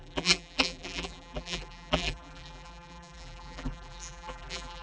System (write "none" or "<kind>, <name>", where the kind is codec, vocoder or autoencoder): vocoder, BigVGAN v2